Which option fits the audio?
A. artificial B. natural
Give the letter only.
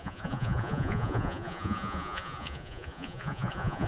A